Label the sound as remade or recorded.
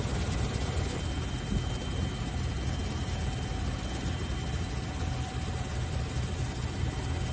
recorded